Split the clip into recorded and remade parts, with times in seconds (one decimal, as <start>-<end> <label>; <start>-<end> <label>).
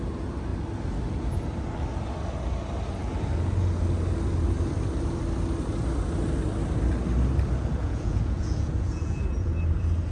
0.0-7.8 recorded; 7.8-9.5 remade; 9.5-10.1 recorded